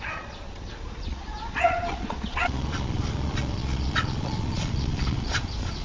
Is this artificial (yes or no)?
yes